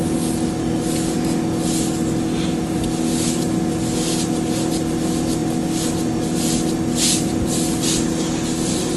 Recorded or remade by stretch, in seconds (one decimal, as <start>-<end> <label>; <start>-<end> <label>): 0.0-9.0 recorded